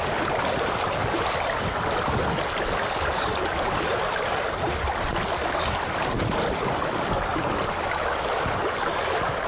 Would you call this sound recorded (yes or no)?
yes